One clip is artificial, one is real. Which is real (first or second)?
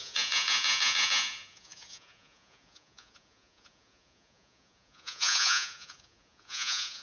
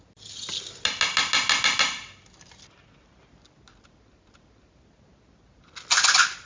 second